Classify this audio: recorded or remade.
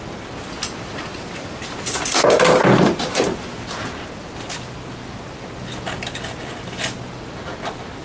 recorded